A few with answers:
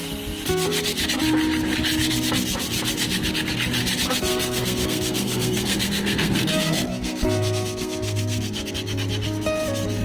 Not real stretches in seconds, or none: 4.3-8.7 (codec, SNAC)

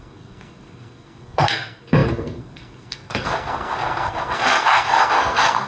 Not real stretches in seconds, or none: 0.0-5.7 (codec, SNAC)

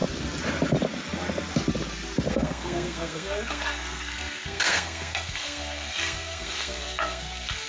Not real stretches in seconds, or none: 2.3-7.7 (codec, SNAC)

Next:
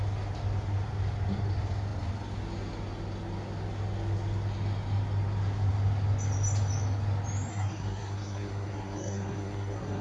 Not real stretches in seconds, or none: 7.5-10.0 (codec, SNAC)